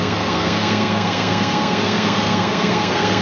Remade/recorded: remade